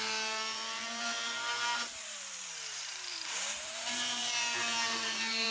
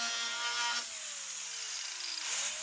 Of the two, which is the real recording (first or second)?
second